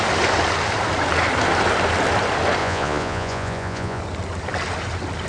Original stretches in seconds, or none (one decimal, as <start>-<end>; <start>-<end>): 0.0-2.6; 4.0-5.3